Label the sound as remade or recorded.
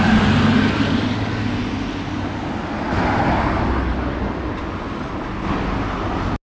recorded